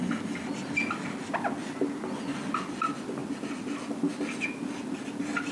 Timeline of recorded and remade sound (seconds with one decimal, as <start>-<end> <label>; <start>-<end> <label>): 0.0-5.5 recorded